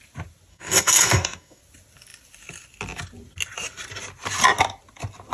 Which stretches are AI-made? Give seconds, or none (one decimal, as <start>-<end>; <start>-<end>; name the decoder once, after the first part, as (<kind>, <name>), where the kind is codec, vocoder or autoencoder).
0.5-1.6 (codec, DAC)